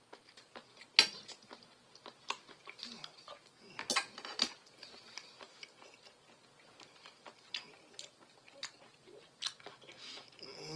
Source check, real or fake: real